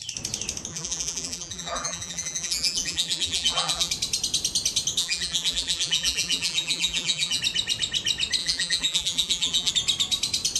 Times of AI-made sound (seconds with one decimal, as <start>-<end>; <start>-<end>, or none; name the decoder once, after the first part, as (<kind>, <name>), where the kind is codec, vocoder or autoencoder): 0.7-3.9 (vocoder, BigVGAN v2); 5.0-7.4; 8.4-9.7